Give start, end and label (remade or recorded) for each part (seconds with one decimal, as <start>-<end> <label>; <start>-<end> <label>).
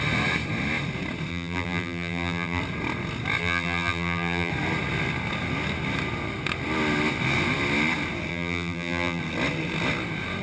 0.0-1.3 recorded; 1.3-2.6 remade; 2.6-3.4 recorded; 3.4-4.5 remade; 4.5-8.3 recorded; 8.3-9.2 remade; 9.2-10.4 recorded